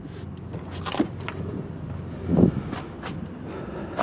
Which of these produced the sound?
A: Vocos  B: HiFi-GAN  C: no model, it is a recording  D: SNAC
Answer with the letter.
C